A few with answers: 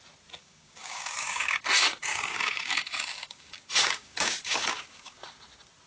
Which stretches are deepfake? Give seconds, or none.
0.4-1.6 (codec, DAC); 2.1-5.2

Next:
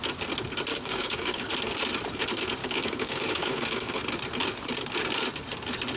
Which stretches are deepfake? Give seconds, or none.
0.7-1.5 (codec, DAC); 2.6-4.0

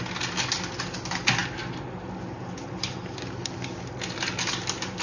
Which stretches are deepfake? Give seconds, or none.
none